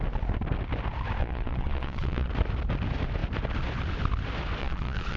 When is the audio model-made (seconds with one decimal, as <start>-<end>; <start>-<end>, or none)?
1.2-2.3; 4.6-5.2